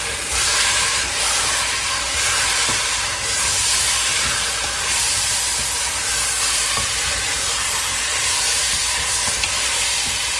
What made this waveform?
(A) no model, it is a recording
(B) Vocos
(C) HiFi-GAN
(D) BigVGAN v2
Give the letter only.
D